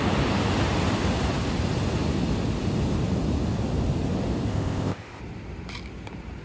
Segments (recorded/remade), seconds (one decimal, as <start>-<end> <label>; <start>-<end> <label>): 0.0-4.5 recorded; 4.5-5.2 remade; 5.2-6.4 recorded